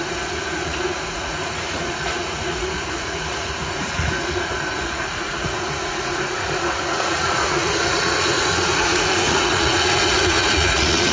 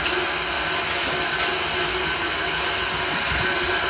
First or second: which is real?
second